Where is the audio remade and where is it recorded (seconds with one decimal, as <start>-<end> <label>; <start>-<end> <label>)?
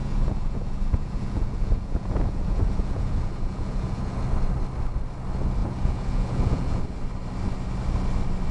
0.0-4.2 remade; 4.2-5.6 recorded; 5.6-6.8 remade; 6.8-8.5 recorded